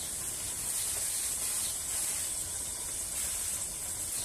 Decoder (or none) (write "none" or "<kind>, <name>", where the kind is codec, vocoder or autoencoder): none